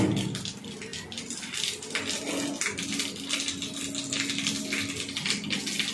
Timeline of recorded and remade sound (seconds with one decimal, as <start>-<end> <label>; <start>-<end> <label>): 0.0-5.9 recorded